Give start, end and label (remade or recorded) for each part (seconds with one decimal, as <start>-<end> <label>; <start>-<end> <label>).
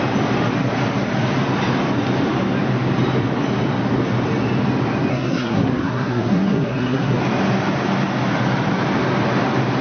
0.0-5.1 recorded; 5.1-7.2 remade; 7.2-9.8 recorded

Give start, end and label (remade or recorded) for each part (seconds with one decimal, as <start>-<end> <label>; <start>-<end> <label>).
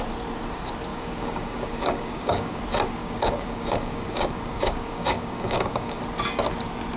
0.0-0.9 recorded; 0.9-2.6 remade; 2.6-3.0 recorded; 3.0-6.0 remade; 6.0-7.0 recorded